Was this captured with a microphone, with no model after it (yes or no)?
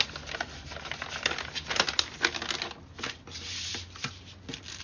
yes